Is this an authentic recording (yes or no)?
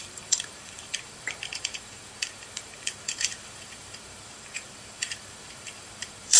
no